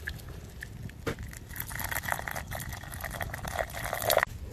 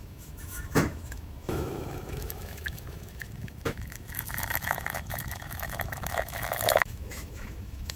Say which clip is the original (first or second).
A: first